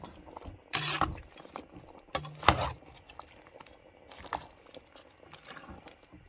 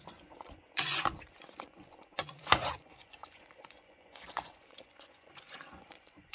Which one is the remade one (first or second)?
second